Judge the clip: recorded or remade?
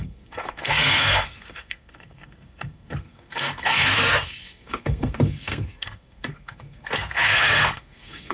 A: remade